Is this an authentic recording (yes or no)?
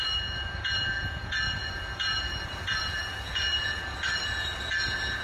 no